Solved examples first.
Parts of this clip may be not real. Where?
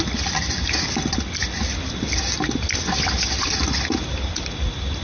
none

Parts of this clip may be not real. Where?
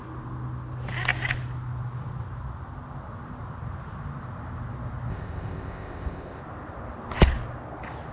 5.1-6.4 (codec, ZipCodec)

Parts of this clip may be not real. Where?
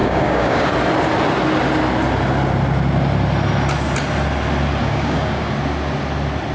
0.0-0.7 (codec, DAC); 4.8-5.5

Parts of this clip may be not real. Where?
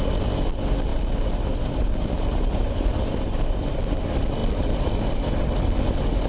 0.9-3.7 (vocoder, BigVGAN v2)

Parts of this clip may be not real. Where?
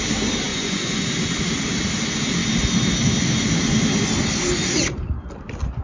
0.5-1.0 (vocoder, Vocos)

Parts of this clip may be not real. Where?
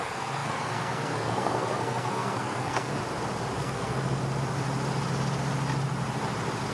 0.0-3.0 (codec, SNAC); 3.6-4.2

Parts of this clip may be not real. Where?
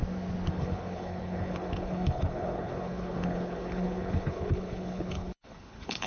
0.5-6.1 (codec, HILCodec)